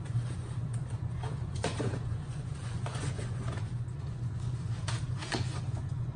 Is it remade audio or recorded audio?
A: remade